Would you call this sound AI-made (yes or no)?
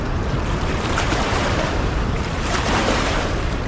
yes